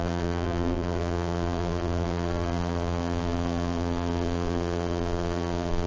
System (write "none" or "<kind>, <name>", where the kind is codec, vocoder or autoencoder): vocoder, BigVGAN v2